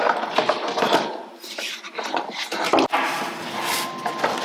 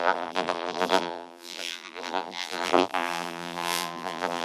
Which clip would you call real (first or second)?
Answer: first